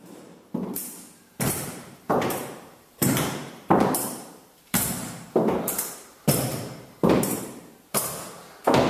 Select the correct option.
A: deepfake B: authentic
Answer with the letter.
A